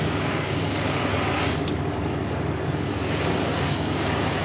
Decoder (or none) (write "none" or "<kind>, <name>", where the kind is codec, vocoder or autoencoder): codec, DAC